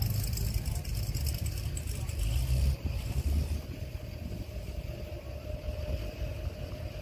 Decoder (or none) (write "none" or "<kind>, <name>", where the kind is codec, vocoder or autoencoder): none